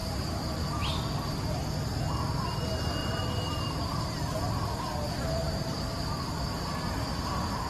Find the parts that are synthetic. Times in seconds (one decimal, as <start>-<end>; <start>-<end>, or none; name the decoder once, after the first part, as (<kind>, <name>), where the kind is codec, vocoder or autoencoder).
0.0-0.6 (vocoder, BigVGAN v2); 3.0-6.9